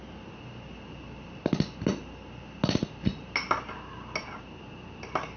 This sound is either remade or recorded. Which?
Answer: recorded